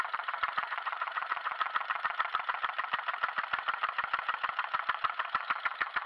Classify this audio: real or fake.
fake